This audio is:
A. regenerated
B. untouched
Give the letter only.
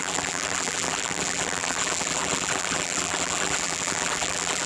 A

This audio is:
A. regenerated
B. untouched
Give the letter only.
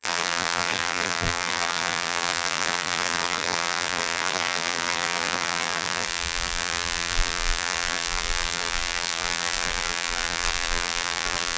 A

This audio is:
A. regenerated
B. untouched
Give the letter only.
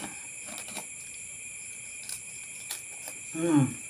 A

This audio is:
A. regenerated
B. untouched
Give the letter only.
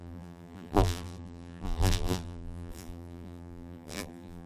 A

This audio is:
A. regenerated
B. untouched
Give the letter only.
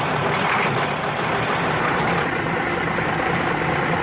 A